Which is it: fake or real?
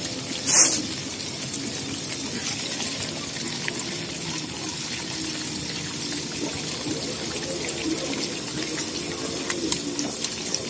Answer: real